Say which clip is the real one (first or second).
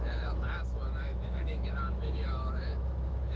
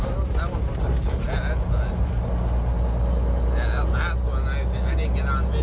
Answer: second